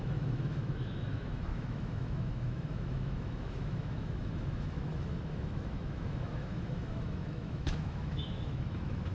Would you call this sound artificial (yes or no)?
yes